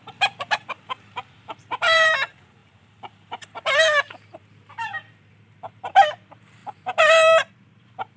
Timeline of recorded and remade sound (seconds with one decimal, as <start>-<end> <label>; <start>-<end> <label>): 0.0-8.2 remade